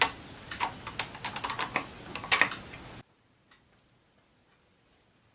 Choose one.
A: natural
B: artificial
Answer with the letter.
A